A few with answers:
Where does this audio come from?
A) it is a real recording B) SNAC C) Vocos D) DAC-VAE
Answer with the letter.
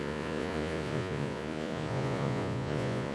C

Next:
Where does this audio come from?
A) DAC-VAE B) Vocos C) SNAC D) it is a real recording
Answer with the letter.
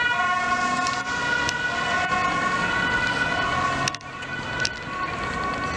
D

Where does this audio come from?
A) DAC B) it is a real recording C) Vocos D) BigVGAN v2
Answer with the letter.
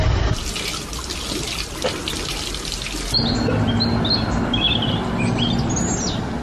B